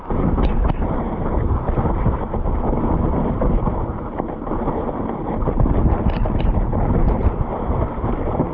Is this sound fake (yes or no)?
yes